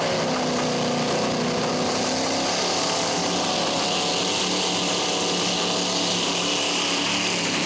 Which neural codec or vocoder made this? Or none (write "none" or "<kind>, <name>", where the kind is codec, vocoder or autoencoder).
none